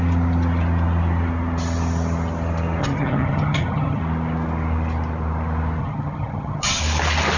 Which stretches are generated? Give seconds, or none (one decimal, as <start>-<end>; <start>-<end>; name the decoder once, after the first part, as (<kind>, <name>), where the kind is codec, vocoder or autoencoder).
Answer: 2.8-4.0 (vocoder, HiFi-GAN); 5.8-6.8